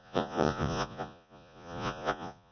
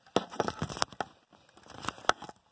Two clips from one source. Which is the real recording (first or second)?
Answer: second